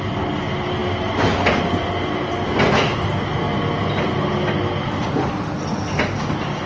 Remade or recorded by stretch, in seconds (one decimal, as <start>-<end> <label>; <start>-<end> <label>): 0.0-6.7 recorded